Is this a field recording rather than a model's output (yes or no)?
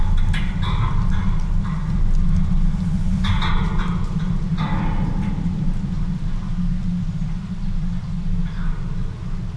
yes